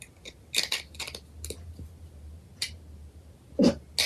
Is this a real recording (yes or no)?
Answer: yes